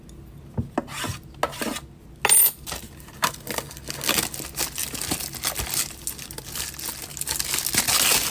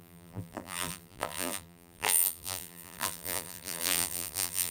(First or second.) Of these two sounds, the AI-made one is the second